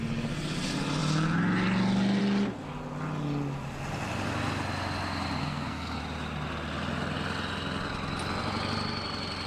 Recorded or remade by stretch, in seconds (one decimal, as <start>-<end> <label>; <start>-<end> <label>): 0.0-5.4 recorded; 5.4-6.0 remade; 6.0-9.5 recorded